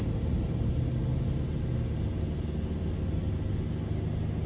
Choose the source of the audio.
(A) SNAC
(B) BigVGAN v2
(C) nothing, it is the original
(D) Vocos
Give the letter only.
C